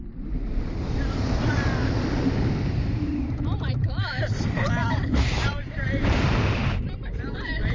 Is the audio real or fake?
fake